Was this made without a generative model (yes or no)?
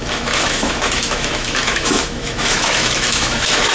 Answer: no